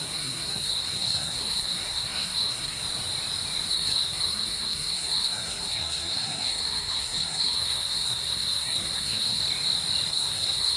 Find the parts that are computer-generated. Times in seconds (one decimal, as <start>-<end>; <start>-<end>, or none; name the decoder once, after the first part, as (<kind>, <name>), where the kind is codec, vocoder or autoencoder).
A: 0.0-2.8 (codec, SNAC); 3.7-9.4; 10.1-10.8